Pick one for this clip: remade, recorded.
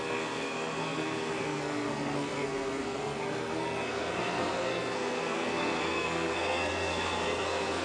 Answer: remade